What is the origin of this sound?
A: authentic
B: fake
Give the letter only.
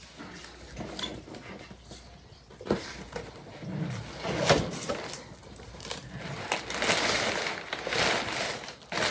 A